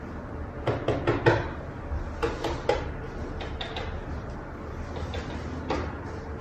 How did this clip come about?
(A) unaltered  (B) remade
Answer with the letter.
A